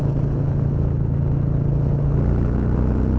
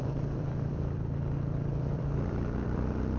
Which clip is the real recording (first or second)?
first